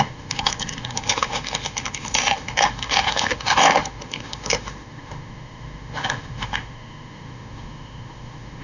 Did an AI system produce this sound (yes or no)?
yes